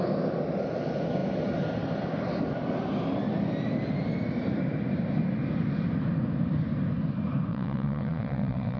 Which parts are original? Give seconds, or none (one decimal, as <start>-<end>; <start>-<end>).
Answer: 0.0-7.5